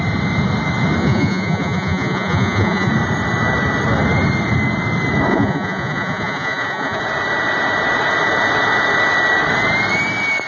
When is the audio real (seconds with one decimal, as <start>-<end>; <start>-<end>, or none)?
0.0-1.0; 2.9-5.3; 7.0-10.5